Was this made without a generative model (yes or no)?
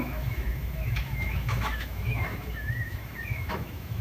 no